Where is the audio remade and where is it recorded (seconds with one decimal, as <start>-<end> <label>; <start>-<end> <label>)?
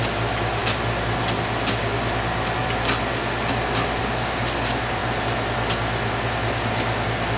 0.0-7.4 recorded